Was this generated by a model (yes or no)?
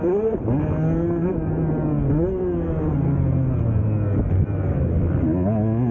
no